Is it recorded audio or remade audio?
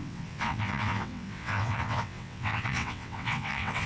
remade